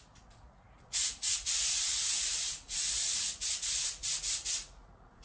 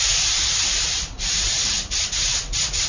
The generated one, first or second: first